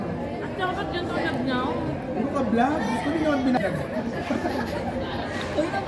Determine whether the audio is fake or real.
real